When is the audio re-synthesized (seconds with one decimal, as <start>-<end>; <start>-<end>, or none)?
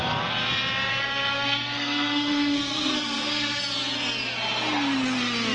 0.9-3.6